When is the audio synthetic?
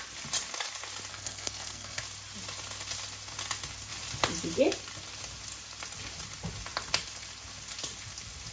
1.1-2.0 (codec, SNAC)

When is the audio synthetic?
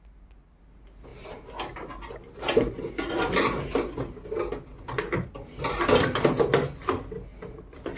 none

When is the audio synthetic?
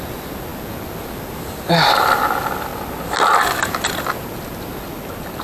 none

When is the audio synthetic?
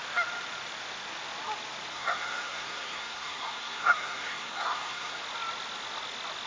1.9-5.2 (codec, SNAC)